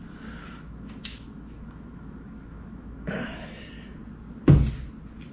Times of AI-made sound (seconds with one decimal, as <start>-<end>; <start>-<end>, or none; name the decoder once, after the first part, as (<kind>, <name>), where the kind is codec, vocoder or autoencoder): 0.4-3.6 (autoencoder, DAC-VAE)